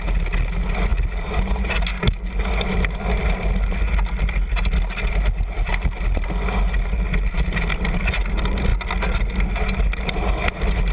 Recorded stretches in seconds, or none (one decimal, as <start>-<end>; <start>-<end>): 0.0-10.9